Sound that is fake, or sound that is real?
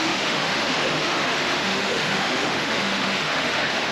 fake